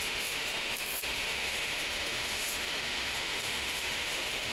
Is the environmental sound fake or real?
fake